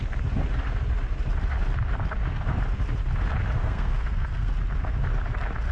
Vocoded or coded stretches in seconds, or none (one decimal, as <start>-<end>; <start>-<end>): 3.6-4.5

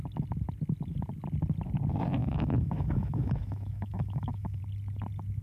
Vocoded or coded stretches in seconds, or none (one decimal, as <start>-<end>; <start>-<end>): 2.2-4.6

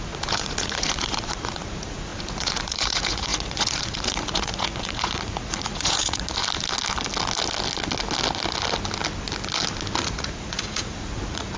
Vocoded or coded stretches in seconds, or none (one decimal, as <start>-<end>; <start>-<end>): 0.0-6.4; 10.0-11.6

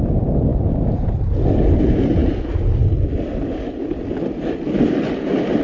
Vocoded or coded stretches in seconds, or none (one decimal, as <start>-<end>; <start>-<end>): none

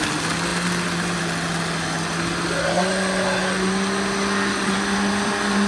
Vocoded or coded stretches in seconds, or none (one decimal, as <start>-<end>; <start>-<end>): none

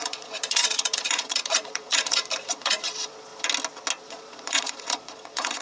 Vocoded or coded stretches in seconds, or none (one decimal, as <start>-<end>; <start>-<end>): 0.0-3.3; 4.0-5.6

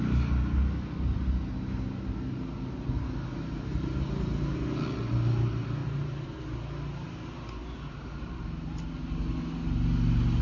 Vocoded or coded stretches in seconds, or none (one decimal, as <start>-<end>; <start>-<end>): 5.8-6.4; 7.6-8.8